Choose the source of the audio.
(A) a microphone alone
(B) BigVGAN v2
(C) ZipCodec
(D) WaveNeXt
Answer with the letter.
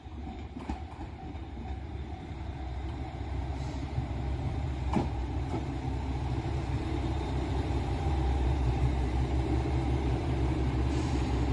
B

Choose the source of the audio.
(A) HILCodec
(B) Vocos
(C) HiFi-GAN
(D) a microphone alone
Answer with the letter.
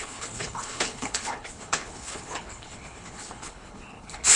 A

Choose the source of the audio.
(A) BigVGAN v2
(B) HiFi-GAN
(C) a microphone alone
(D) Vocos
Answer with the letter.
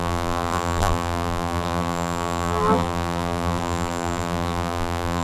A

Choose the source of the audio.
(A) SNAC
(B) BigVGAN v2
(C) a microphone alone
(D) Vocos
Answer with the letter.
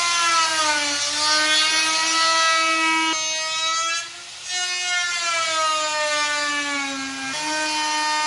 C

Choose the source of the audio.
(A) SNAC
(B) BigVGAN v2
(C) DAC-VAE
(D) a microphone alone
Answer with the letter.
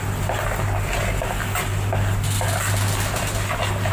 D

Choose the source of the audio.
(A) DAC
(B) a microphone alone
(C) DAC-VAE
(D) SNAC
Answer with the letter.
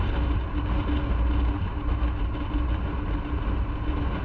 B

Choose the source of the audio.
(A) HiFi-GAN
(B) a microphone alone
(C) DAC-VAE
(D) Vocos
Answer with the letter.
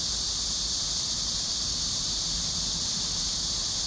B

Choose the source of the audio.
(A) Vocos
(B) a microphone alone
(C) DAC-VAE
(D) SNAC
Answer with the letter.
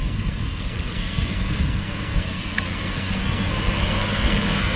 D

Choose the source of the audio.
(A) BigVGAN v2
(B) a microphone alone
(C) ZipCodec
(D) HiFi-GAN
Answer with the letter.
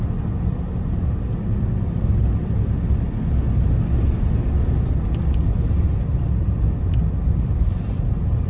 B